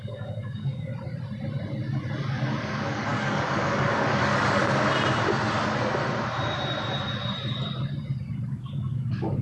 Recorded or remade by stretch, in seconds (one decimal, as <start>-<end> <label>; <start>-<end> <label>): 0.0-0.9 remade; 0.9-2.6 recorded; 2.6-4.6 remade; 4.6-8.5 recorded; 8.5-9.4 remade